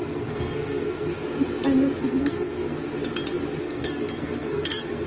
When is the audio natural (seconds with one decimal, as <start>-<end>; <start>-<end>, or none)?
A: 1.1-2.0; 2.9-3.6